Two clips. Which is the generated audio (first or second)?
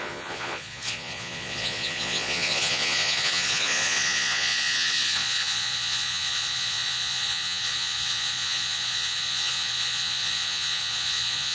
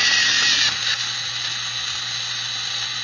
first